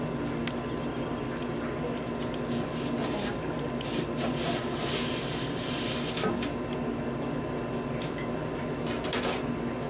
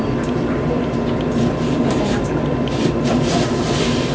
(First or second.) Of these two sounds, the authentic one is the first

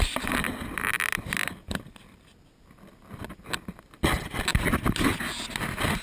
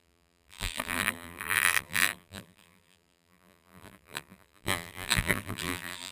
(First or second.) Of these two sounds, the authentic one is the first